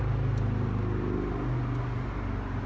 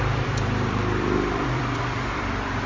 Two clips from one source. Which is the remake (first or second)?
second